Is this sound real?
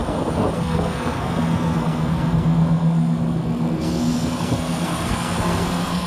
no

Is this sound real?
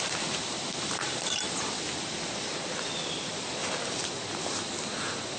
yes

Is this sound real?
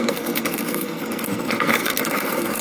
no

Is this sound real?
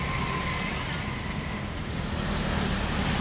yes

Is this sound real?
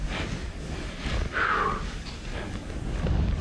no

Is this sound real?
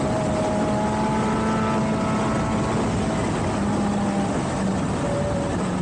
yes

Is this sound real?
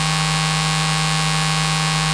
yes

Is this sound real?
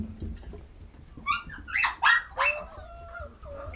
yes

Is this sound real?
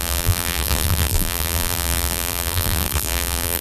no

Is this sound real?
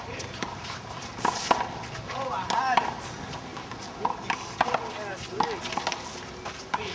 yes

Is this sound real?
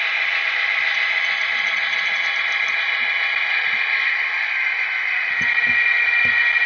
yes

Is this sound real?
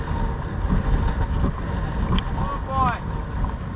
yes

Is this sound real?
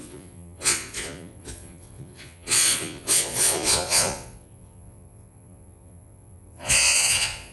no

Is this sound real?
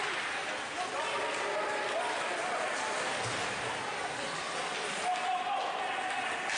yes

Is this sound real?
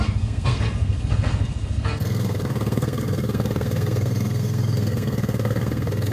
no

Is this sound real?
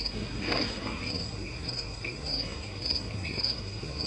no